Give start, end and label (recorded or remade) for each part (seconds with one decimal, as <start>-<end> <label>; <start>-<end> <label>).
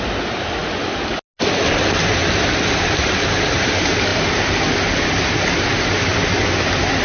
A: 0.0-7.0 recorded